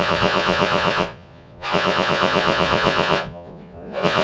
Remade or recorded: remade